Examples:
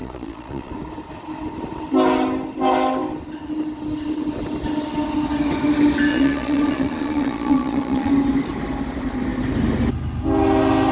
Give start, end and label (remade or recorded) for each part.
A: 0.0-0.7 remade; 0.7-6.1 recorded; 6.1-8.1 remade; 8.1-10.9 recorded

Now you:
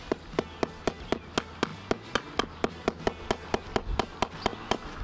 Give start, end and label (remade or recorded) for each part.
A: 0.0-5.0 recorded

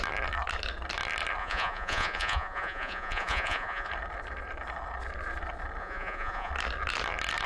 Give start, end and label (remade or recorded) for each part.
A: 0.0-1.4 recorded; 1.4-3.9 remade; 3.9-5.8 recorded; 5.8-6.5 remade; 6.5-7.5 recorded

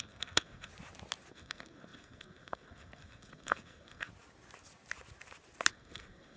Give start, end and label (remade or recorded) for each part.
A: 0.0-0.7 remade; 0.7-1.3 recorded; 1.3-4.1 remade; 4.1-5.7 recorded; 5.7-6.4 remade

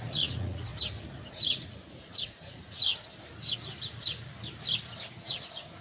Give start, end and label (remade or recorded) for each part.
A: 0.0-0.7 remade; 0.7-1.3 recorded; 1.3-2.9 remade; 2.9-5.1 recorded; 5.1-5.8 remade